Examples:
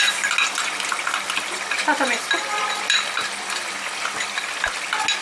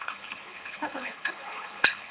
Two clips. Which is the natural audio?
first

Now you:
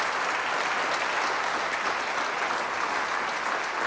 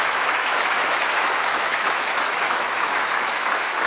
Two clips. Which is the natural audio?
first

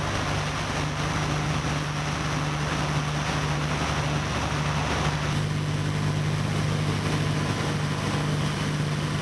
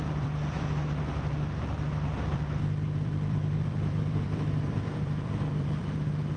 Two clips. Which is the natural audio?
first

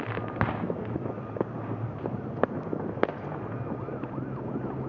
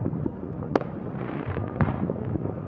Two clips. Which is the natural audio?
first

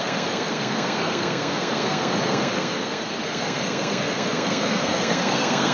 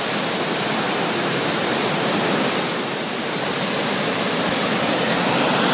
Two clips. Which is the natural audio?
second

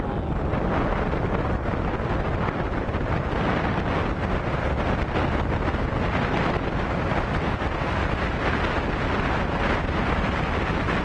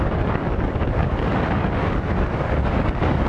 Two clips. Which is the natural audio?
first